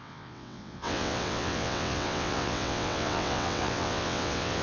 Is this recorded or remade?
remade